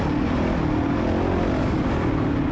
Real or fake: real